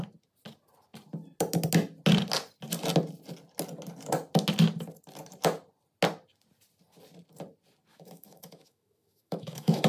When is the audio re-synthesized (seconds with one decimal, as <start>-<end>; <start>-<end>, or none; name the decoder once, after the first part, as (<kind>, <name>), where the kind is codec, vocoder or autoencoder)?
7.9-9.9 (autoencoder, DAC-VAE)